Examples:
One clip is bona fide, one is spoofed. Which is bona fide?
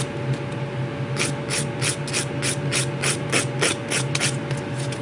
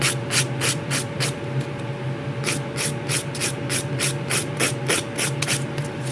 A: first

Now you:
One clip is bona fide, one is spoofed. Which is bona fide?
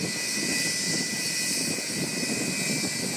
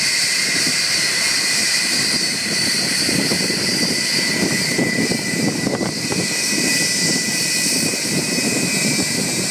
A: first